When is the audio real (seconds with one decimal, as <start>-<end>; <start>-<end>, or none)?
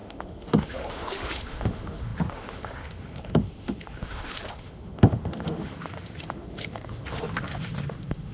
none